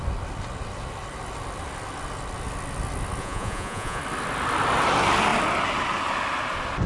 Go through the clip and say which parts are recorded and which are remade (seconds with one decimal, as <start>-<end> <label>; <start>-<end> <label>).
0.0-3.2 recorded; 3.2-4.0 remade; 4.0-6.9 recorded